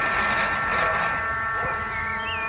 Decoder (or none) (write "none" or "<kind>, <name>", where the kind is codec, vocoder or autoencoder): none